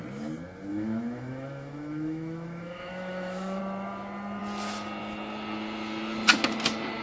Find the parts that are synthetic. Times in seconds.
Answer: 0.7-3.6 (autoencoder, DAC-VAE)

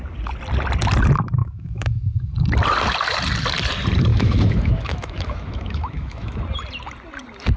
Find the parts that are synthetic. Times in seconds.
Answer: 1.4-2.3 (autoencoder, DAC-VAE); 4.1-6.4

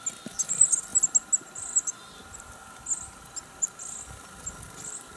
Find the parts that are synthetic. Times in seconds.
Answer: none

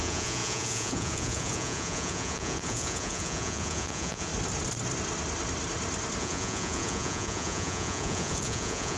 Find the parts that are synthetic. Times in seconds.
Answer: 0.0-4.3 (vocoder, Vocos); 6.2-9.0

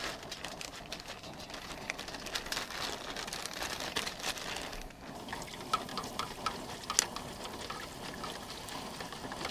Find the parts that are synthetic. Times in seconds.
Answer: 5.9-6.6 (vocoder, BigVGAN v2)